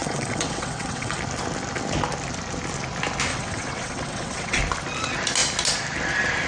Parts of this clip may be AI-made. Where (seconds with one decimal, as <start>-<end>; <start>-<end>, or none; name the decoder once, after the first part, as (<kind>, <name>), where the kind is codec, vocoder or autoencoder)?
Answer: 0.0-1.2 (vocoder, WaveNeXt); 3.3-4.6